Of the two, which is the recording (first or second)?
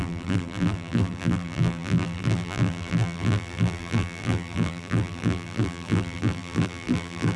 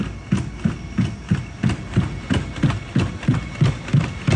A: second